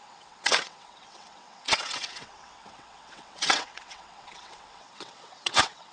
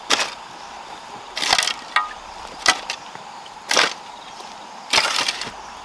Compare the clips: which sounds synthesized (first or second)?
first